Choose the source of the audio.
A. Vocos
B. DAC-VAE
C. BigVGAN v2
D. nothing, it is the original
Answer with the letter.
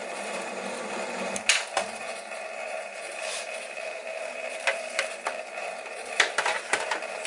C